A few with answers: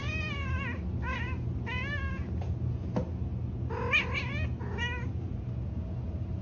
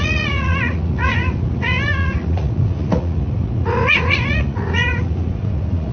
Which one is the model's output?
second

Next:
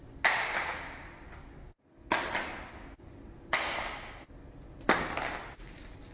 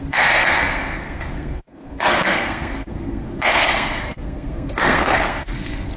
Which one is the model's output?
second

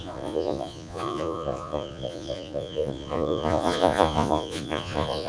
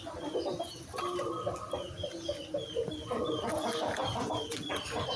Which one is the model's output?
first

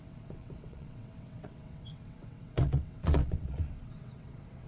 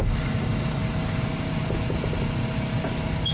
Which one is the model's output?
first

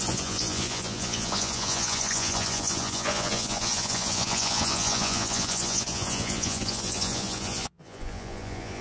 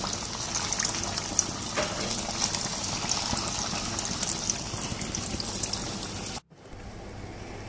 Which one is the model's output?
first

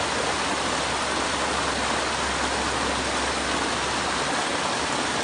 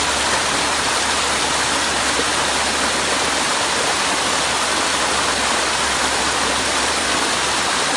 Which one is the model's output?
second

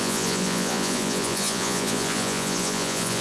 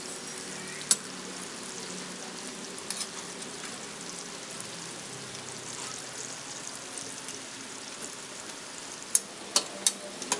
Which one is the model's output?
first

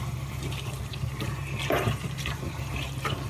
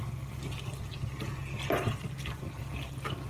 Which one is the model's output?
first